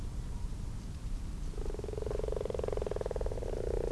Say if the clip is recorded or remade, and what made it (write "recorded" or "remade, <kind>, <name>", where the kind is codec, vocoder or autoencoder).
recorded